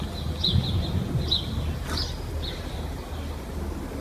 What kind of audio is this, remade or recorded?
recorded